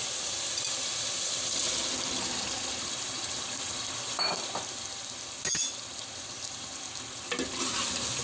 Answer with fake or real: real